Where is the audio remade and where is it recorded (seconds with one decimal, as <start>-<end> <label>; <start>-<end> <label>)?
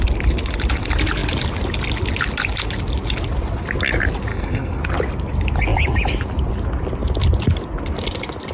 0.0-4.3 recorded; 4.3-4.8 remade; 4.8-8.5 recorded